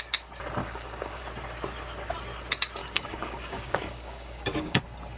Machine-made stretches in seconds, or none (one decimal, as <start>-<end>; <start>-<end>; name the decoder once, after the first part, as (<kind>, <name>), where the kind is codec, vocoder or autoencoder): 0.6-1.2 (codec, DAC); 2.8-4.8